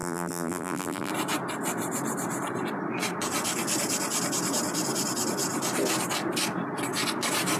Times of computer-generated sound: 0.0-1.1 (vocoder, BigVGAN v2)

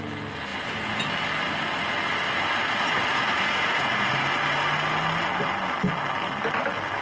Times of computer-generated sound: 0.5-1.0 (vocoder, Vocos); 3.1-4.1

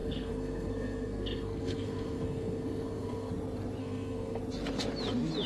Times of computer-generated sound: 0.0-3.3 (codec, SNAC); 3.8-4.4

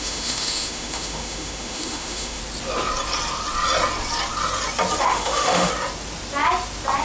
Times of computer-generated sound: 0.0-2.4 (autoencoder, DAC-VAE); 5.0-5.7

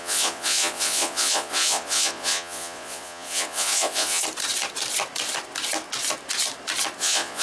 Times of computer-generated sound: 0.0-4.2 (vocoder, Vocos); 7.0-7.4

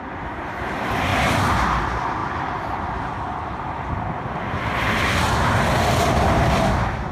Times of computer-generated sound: none

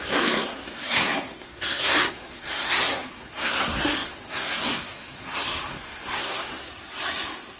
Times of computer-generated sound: 0.0-6.7 (codec, SNAC)